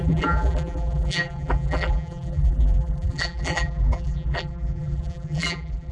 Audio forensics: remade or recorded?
remade